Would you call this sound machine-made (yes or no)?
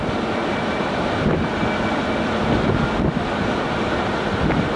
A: no